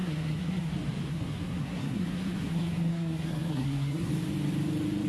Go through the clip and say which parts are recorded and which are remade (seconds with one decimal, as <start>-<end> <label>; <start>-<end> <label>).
0.0-0.7 remade; 0.7-1.1 recorded; 1.1-4.1 remade; 4.1-5.1 recorded